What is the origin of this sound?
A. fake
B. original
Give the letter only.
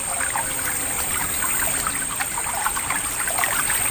B